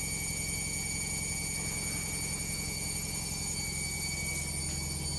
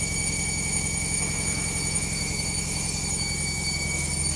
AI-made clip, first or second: second